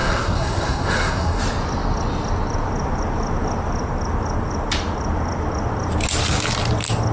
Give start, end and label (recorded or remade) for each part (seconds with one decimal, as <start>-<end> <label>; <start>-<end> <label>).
0.0-1.4 remade; 1.4-7.1 recorded